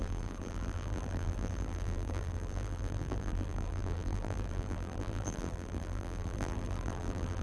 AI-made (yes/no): yes